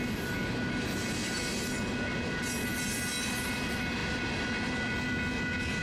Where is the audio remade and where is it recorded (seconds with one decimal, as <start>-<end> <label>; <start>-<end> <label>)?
0.0-5.8 recorded